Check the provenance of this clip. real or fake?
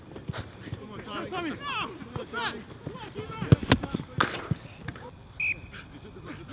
real